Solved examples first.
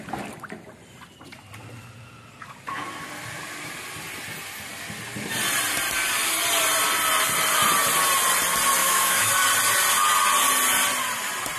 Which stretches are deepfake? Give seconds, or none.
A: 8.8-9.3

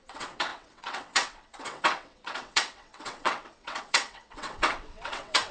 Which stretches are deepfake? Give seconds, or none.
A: 0.0-5.5